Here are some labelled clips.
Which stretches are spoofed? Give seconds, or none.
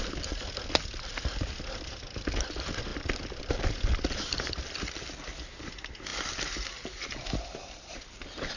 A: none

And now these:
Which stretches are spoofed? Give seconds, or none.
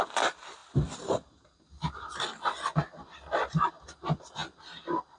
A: none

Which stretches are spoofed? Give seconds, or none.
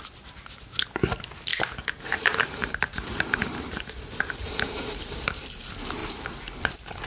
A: 1.5-4.5; 6.0-6.6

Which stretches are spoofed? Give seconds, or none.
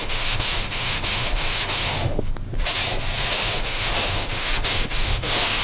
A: 0.0-2.3; 3.2-5.6